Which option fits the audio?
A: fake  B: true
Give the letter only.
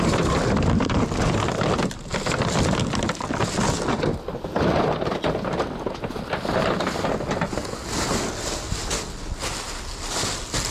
B